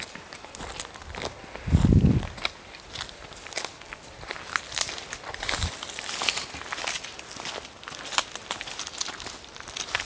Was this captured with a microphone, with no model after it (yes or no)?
yes